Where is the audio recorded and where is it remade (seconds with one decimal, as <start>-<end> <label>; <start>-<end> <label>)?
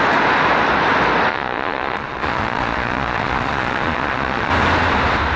0.0-1.3 recorded; 1.3-4.5 remade; 4.5-5.4 recorded